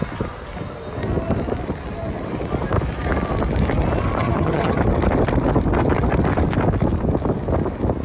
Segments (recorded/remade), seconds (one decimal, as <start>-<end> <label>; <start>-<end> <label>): 0.0-4.2 recorded; 4.2-4.8 remade; 4.8-8.0 recorded